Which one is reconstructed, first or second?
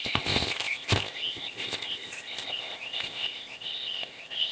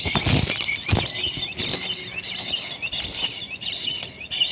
first